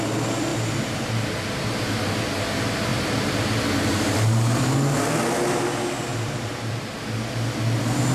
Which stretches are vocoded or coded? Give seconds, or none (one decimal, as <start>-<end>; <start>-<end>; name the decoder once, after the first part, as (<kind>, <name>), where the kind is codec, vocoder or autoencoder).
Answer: 0.5-2.4 (vocoder, BigVGAN v2); 2.9-4.7; 6.1-7.0